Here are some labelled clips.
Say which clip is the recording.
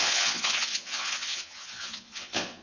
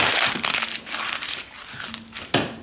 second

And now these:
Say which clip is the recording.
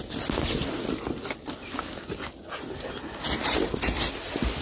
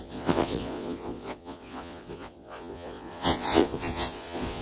first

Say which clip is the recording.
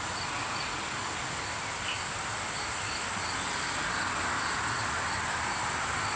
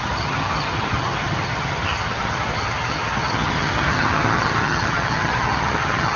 first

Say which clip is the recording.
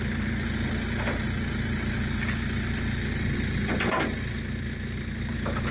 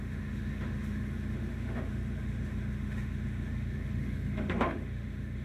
first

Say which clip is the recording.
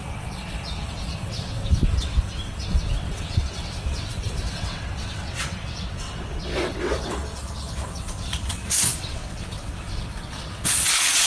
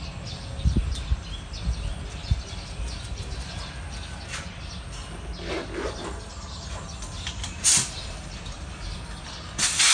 second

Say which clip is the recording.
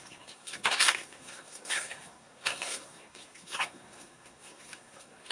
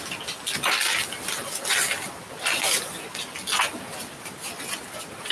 second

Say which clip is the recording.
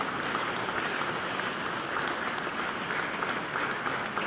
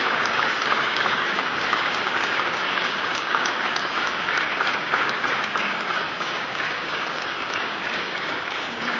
first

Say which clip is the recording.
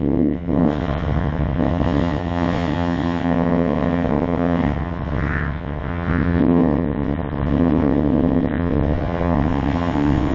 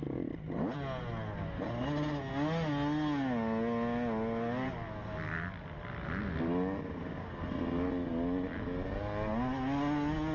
second